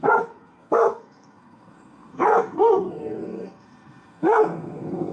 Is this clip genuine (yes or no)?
no